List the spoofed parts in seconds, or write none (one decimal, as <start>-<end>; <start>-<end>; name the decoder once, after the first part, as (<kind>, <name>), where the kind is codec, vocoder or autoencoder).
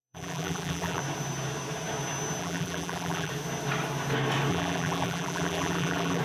0.0-1.0 (vocoder, BigVGAN v2); 2.4-3.3; 4.5-6.2